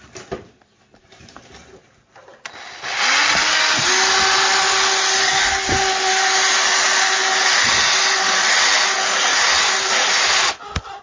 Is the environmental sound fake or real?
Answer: real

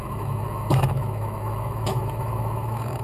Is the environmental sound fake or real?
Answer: fake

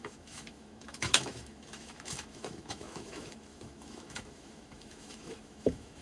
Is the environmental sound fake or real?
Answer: fake